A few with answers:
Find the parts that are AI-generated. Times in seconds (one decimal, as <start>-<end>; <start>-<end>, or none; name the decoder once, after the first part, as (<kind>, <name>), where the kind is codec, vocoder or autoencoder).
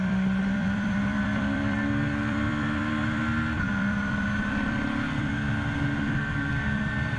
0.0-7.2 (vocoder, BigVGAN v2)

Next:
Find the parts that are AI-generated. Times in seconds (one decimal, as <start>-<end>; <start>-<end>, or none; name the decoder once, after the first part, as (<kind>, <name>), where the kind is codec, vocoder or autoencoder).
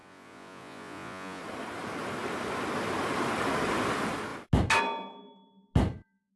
0.0-1.4 (vocoder, Vocos)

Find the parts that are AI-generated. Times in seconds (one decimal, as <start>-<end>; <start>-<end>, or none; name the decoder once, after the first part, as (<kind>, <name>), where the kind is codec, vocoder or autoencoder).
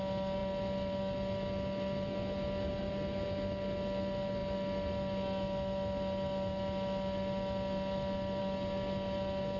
none